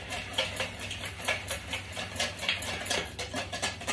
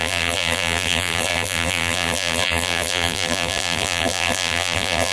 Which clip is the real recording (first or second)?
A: first